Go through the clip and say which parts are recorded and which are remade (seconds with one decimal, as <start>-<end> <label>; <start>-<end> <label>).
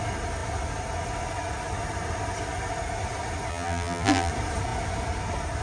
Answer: 0.0-3.5 recorded; 3.5-4.3 remade; 4.3-5.6 recorded